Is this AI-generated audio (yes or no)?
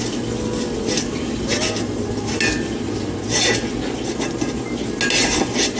no